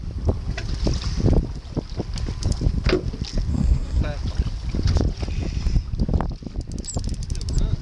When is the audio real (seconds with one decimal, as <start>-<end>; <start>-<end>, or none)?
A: 0.0-3.5; 4.0-7.8